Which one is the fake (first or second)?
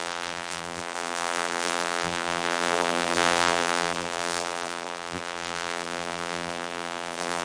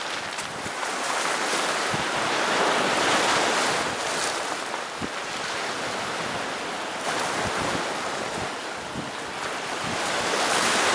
first